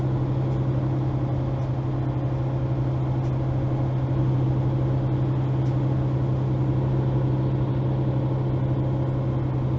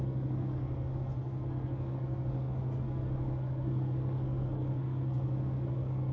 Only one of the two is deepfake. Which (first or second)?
second